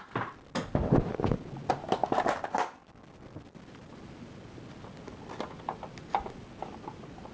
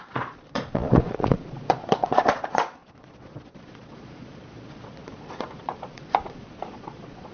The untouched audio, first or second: first